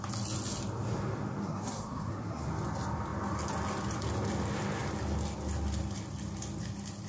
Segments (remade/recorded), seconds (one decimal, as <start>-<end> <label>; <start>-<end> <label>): 0.0-1.4 recorded; 1.4-2.5 remade; 2.5-7.1 recorded

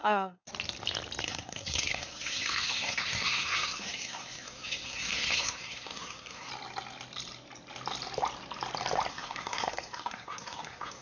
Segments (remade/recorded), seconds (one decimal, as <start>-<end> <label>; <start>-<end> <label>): 0.0-0.5 remade; 0.5-1.2 recorded; 1.2-6.5 remade; 6.5-9.1 recorded; 9.1-11.0 remade

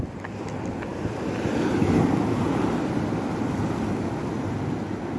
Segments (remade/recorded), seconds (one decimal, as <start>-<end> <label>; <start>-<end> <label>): 0.0-5.2 recorded